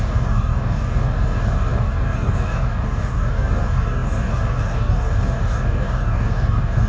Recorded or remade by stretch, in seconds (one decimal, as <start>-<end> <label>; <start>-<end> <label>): 0.0-6.9 remade